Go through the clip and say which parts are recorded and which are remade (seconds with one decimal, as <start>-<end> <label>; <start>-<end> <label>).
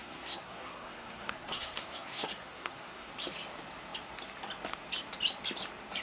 0.0-3.1 remade; 3.1-6.0 recorded